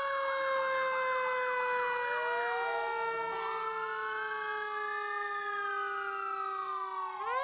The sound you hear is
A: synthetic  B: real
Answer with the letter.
B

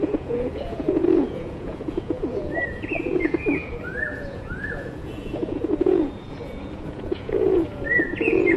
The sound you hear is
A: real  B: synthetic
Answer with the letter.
B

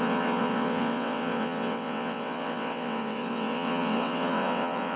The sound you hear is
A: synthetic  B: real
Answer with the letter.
A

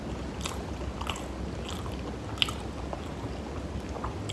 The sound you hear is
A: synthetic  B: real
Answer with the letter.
B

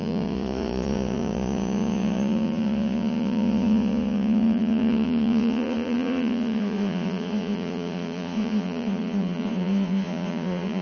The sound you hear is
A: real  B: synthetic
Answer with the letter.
B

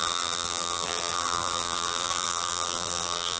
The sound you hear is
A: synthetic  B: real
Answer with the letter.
A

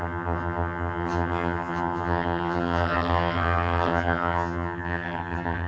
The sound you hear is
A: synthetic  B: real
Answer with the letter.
A